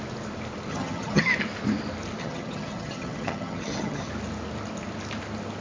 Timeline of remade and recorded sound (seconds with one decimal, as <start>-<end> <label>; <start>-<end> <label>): 0.0-0.7 recorded; 0.7-1.2 remade; 1.2-2.2 recorded; 2.2-4.1 remade; 4.1-5.6 recorded